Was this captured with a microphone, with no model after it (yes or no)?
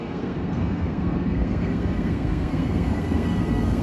no